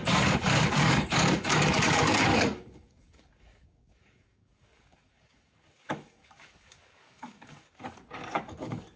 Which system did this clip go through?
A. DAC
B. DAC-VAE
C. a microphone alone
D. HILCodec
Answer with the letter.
A